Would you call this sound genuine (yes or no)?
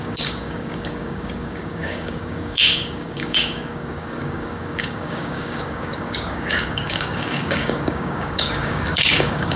no